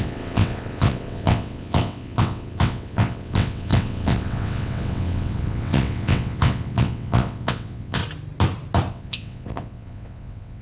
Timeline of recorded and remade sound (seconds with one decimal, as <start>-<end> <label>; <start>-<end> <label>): 0.0-8.0 remade; 8.0-8.9 recorded; 8.9-10.6 remade